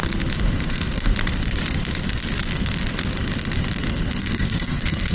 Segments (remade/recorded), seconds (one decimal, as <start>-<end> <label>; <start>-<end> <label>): 0.0-0.7 recorded; 0.7-1.1 remade; 1.1-4.2 recorded; 4.2-5.1 remade